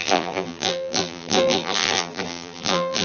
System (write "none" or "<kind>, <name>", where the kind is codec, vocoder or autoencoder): vocoder, BigVGAN v2